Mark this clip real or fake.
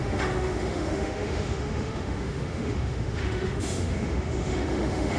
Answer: fake